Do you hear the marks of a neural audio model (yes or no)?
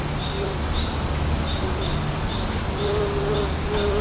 no